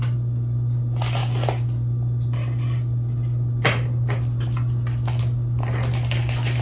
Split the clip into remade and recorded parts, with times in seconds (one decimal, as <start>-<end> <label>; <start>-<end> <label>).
0.0-6.6 recorded